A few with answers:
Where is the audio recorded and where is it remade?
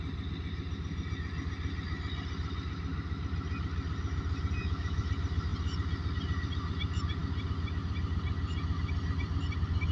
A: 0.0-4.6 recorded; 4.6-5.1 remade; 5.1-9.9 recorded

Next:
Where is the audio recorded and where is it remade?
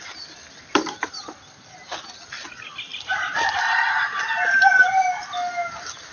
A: 0.0-6.1 recorded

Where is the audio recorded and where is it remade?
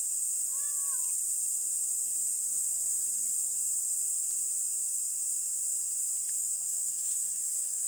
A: 0.0-6.4 recorded; 6.4-7.9 remade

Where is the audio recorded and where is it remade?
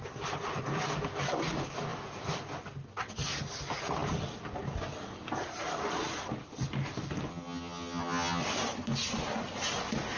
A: 0.0-7.3 recorded; 7.3-8.4 remade; 8.4-10.2 recorded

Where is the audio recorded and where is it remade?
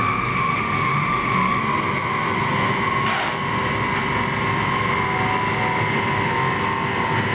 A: 0.0-1.6 remade; 1.6-7.3 recorded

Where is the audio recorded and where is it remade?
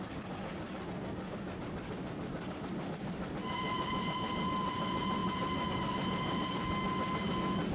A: 0.0-7.7 recorded